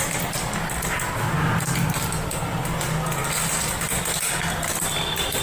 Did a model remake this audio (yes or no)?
no